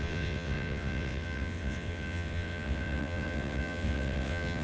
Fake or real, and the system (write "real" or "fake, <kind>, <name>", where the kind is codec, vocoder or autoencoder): fake, vocoder, WaveNeXt